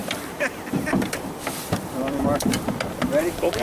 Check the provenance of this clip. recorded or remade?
remade